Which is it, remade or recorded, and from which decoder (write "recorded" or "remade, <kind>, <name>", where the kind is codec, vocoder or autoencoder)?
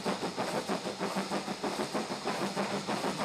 recorded